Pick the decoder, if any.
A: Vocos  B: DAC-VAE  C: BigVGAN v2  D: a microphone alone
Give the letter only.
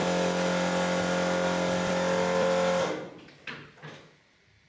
D